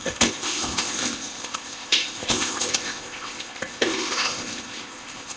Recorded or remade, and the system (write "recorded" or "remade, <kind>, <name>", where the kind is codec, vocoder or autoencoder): remade, codec, ZipCodec